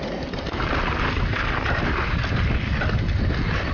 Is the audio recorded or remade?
recorded